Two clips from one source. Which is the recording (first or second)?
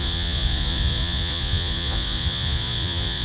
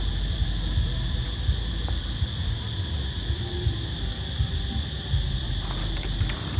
second